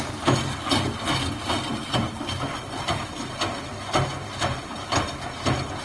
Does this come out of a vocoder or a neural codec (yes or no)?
no